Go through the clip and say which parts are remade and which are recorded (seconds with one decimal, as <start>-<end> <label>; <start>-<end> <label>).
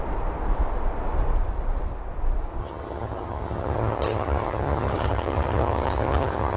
0.0-2.6 recorded; 2.6-6.6 remade